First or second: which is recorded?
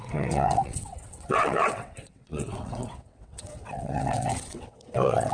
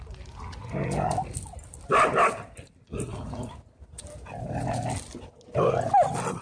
second